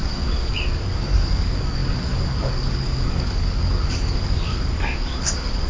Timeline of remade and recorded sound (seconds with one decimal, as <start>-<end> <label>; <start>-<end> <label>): 0.0-5.7 remade